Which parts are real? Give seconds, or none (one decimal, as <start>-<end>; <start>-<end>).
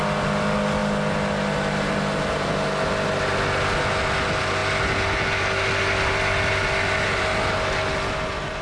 0.0-8.6